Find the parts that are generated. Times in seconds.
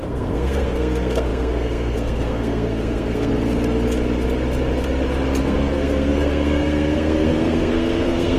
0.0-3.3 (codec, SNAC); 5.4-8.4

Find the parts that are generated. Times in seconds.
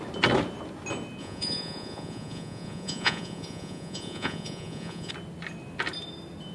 1.2-5.1 (vocoder, Vocos)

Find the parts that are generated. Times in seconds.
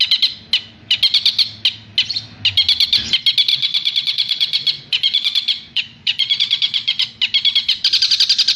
3.5-7.1 (vocoder, Vocos)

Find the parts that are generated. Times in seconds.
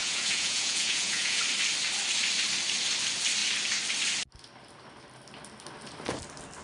0.0-1.4 (vocoder, Vocos)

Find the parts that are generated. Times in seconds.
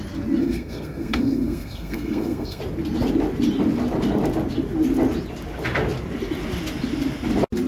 0.4-2.6 (codec, SNAC)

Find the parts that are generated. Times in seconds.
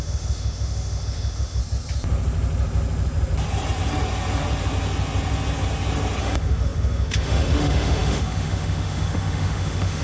0.0-1.6 (autoencoder, DAC-VAE); 6.2-10.0